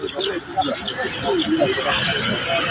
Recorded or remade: recorded